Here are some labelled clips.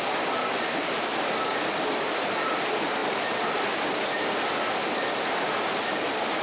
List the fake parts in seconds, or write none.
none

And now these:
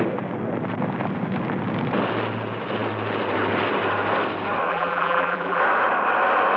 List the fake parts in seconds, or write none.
4.7-5.6

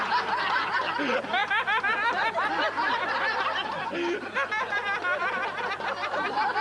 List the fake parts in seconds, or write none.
none

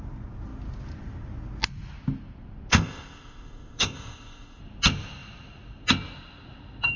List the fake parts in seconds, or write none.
2.7-4.6

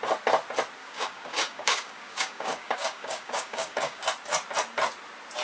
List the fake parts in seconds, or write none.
0.8-4.0

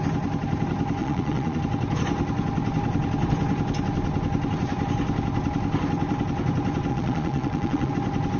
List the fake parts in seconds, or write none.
1.0-1.6; 6.9-7.9

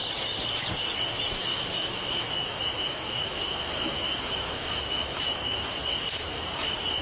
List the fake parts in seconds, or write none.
1.5-5.7

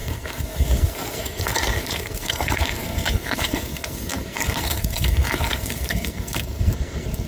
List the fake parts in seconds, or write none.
0.0-7.3